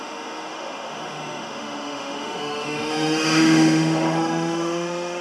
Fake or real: fake